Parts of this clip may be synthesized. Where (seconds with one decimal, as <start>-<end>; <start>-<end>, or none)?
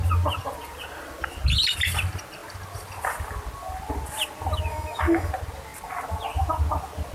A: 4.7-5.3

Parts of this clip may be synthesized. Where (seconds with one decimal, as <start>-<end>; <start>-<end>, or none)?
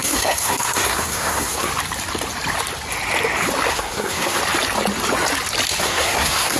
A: 0.0-1.7; 3.7-4.4; 5.8-6.6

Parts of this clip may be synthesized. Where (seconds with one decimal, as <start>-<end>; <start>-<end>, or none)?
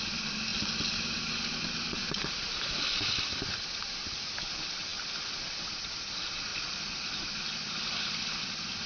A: none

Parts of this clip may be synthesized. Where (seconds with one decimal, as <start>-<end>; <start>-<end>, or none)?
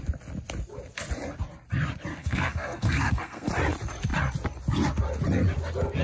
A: 2.1-3.5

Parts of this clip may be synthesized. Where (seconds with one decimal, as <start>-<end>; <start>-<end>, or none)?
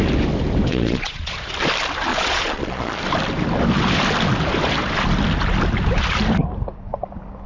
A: 0.7-1.3; 2.1-3.0